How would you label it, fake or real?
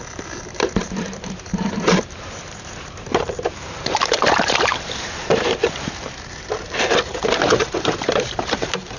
fake